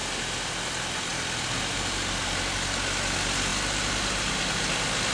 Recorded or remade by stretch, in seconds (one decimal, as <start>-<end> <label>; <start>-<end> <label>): 0.0-5.1 recorded